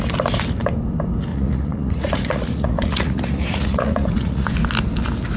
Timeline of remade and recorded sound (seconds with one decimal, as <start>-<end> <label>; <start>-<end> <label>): 0.0-1.3 recorded; 1.3-4.5 remade; 4.5-5.4 recorded